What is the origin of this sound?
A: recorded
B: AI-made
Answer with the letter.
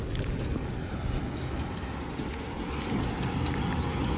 A